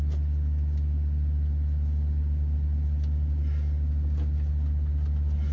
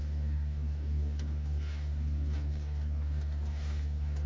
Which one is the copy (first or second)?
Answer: second